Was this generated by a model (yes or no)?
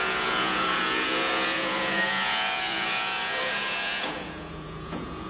yes